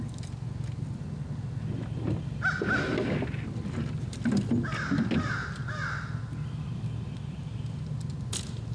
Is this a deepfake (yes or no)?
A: no